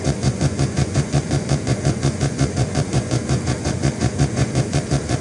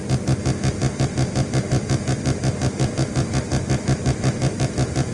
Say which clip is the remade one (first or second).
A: first